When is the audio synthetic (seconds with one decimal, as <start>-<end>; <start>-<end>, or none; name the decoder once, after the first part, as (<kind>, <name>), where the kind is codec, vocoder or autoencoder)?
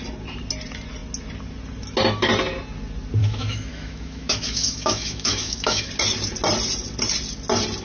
3.2-5.9 (autoencoder, DAC-VAE)